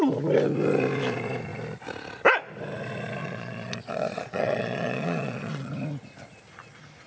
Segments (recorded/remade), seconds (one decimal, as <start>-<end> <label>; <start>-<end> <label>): 0.0-3.2 recorded; 3.2-5.7 remade; 5.7-7.1 recorded